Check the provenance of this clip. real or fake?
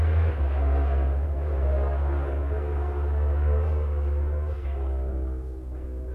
fake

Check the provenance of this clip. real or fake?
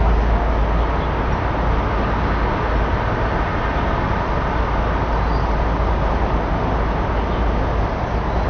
real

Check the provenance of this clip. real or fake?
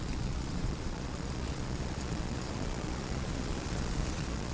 fake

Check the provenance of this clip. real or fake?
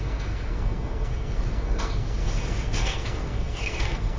fake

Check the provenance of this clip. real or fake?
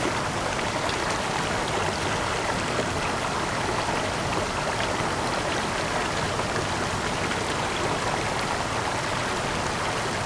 real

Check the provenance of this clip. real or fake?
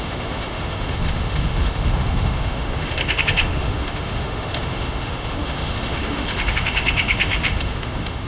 fake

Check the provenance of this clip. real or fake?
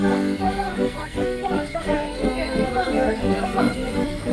fake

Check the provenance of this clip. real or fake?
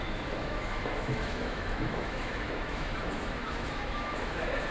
fake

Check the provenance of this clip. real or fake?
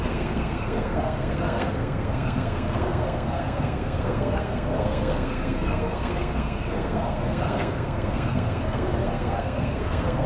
fake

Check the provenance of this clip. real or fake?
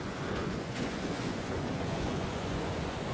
fake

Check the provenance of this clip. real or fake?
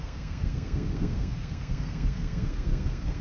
fake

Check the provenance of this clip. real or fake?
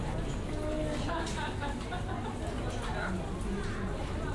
real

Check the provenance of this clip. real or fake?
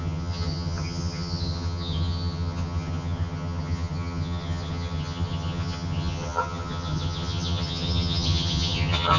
fake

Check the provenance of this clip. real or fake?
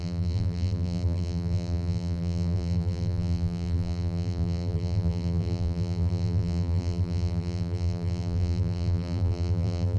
fake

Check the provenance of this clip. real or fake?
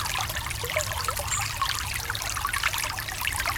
real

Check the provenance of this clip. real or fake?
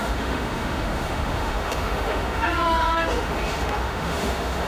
fake